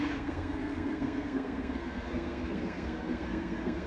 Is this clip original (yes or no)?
no